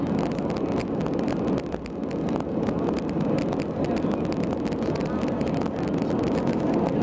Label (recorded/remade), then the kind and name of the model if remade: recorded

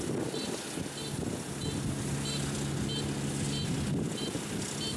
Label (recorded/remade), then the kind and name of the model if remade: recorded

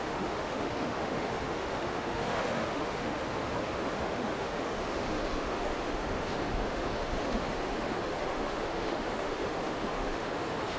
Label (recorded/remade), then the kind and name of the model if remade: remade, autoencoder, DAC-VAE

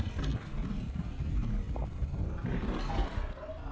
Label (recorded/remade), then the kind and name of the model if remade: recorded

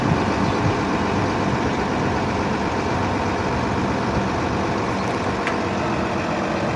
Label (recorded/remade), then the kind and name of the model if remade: recorded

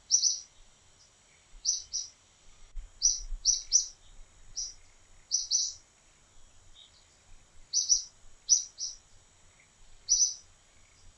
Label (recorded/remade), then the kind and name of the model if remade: recorded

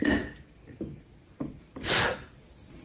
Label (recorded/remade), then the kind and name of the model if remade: recorded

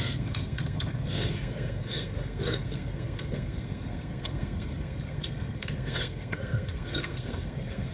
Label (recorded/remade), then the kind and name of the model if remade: remade, codec, SNAC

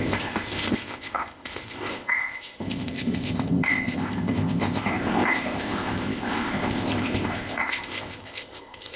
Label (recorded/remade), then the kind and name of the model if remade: remade, codec, ZipCodec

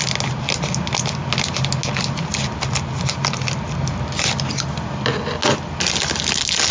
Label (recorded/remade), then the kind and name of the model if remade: recorded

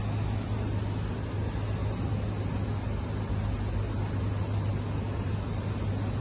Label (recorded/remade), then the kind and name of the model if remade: recorded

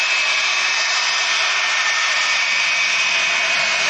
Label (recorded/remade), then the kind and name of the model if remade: remade, vocoder, BigVGAN v2